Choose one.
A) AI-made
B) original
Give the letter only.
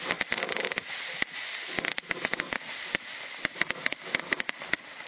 B